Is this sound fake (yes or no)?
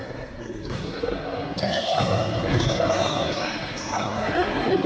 yes